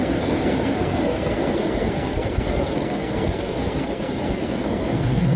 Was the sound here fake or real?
fake